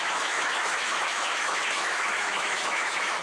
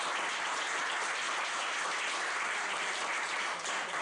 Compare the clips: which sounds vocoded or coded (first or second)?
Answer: first